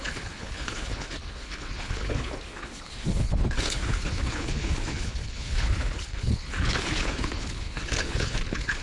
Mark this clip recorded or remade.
remade